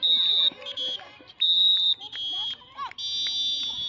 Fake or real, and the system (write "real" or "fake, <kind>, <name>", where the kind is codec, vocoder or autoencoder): real